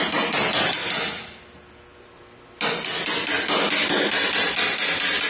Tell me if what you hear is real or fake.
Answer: real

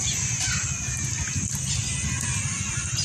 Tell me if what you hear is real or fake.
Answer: real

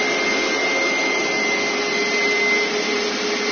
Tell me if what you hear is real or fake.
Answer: real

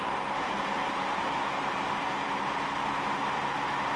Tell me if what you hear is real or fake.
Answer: real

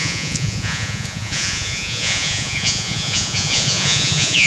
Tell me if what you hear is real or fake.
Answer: fake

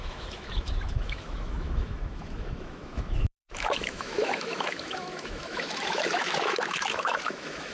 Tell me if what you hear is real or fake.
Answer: fake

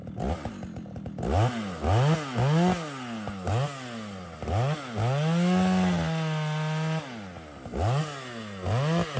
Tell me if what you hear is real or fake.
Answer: real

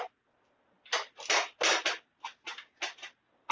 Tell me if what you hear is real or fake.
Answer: real